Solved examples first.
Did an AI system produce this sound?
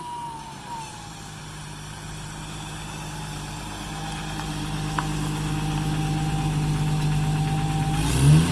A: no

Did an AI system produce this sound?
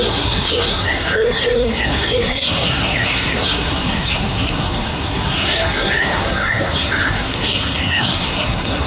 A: yes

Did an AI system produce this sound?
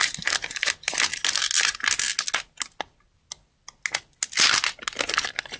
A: no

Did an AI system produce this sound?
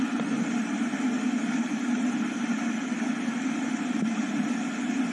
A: no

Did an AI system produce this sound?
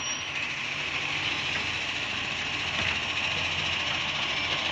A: no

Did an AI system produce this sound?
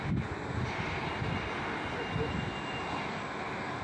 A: no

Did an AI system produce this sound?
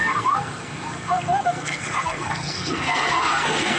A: yes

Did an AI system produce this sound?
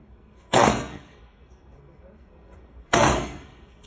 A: yes